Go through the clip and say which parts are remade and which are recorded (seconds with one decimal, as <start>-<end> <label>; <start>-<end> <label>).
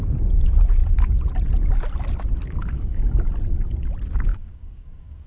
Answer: 0.0-4.3 recorded; 4.3-5.3 remade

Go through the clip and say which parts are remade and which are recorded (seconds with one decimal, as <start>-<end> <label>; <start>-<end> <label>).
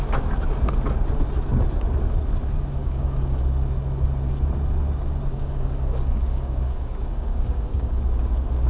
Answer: 0.0-2.8 recorded; 2.8-3.4 remade; 3.4-5.3 recorded; 5.3-8.0 remade; 8.0-8.7 recorded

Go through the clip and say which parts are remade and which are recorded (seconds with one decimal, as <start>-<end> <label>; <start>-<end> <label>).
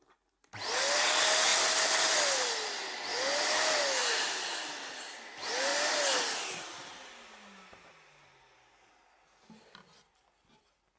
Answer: 0.0-3.1 recorded; 3.1-3.6 remade; 3.6-11.0 recorded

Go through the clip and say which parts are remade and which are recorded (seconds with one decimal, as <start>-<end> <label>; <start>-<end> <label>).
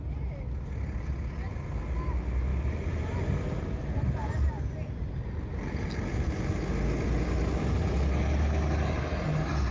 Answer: 0.0-9.7 recorded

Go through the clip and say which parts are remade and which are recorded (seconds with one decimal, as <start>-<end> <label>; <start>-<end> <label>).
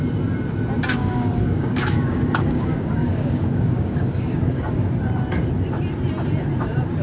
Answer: 0.0-1.0 recorded; 1.0-4.9 remade; 4.9-7.0 recorded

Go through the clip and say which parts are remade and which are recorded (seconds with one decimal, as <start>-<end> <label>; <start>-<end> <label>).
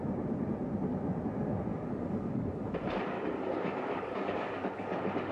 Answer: 0.0-1.7 recorded; 1.7-5.3 remade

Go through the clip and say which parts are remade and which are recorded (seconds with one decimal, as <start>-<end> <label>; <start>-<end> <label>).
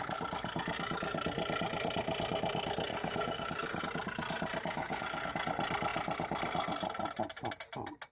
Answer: 0.0-2.9 recorded; 2.9-3.8 remade; 3.8-4.8 recorded; 4.8-5.3 remade; 5.3-8.1 recorded